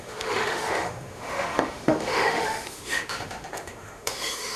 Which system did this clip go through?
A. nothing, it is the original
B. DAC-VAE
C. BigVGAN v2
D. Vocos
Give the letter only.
B